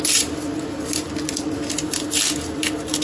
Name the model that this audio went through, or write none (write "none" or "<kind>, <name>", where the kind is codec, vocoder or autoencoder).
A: none